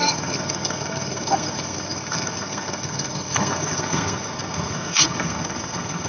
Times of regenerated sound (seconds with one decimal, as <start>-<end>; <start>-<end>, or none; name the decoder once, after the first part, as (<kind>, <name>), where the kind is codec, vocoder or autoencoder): 0.0-6.1 (codec, SNAC)